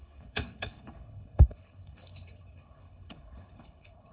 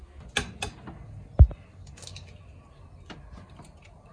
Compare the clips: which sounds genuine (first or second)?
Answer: second